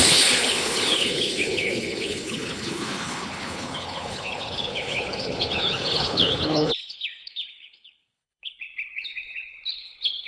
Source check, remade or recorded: remade